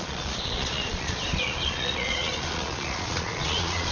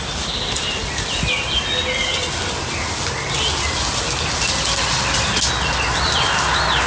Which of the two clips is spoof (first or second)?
first